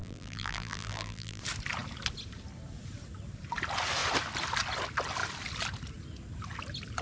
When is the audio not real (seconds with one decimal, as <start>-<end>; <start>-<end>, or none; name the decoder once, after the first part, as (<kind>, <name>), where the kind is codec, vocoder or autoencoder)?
0.0-1.4 (vocoder, BigVGAN v2)